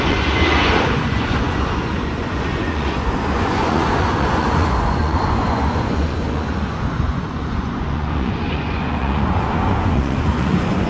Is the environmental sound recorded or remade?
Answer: remade